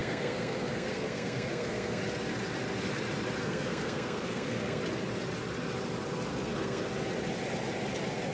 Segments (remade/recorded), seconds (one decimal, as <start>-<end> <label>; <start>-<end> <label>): 0.0-2.0 remade; 2.0-3.4 recorded; 3.4-4.8 remade; 4.8-6.3 recorded; 6.3-6.9 remade; 6.9-8.3 recorded

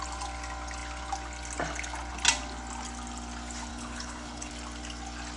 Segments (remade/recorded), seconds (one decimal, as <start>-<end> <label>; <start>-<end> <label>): 0.0-3.7 recorded; 3.7-4.5 remade; 4.5-5.4 recorded

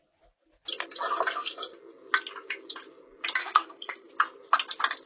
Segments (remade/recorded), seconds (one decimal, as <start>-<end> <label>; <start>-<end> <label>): 0.0-3.4 recorded; 3.4-4.1 remade; 4.1-5.1 recorded